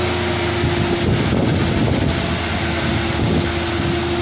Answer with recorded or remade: recorded